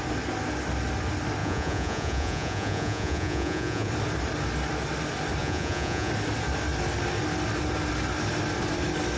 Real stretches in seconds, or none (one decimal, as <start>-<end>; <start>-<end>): 0.0-1.4; 3.9-5.4; 6.1-9.2